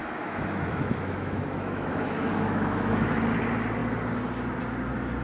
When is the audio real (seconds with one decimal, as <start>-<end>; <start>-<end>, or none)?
3.1-5.2